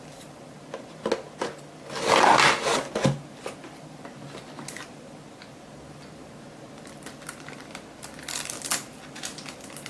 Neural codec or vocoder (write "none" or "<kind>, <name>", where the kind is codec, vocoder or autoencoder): none